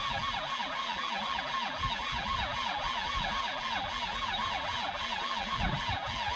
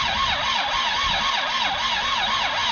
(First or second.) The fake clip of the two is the first